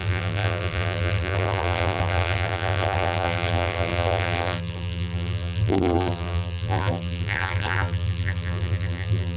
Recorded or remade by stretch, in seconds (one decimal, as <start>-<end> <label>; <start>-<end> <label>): 0.0-9.4 remade